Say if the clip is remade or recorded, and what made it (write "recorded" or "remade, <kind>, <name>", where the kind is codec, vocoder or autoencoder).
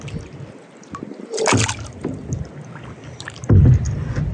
recorded